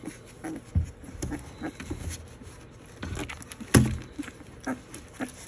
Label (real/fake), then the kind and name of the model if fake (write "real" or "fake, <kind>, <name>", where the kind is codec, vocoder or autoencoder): real